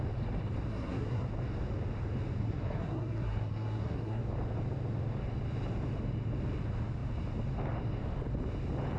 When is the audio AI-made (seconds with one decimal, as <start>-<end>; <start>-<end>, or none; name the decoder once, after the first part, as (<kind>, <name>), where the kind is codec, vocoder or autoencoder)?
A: 0.7-1.3 (codec, SNAC); 2.4-4.2